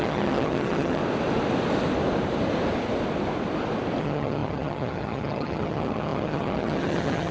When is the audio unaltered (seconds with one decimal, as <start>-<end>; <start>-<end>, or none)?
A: 1.0-4.0